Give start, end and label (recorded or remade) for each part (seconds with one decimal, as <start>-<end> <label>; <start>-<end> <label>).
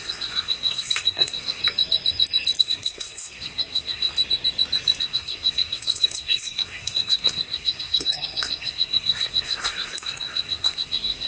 0.0-1.6 remade; 1.6-2.6 recorded; 2.6-4.1 remade; 4.1-5.0 recorded; 5.0-11.3 remade